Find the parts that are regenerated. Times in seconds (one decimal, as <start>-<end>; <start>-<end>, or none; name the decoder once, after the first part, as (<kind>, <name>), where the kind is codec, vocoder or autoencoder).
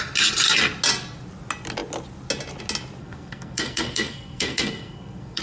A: 3.0-5.4 (codec, SNAC)